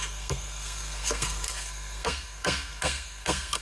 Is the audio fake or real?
fake